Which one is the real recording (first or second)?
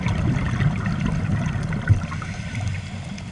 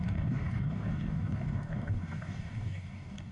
first